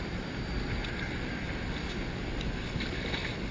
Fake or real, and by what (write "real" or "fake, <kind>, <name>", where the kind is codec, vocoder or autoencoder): real